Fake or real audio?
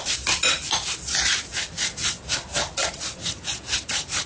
real